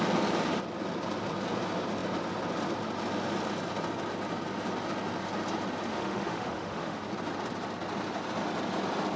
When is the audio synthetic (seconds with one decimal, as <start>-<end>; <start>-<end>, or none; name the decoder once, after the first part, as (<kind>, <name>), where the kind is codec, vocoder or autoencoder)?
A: 5.9-7.0 (autoencoder, DAC-VAE)